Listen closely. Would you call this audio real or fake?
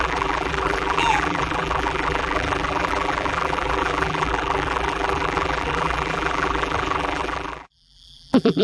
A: fake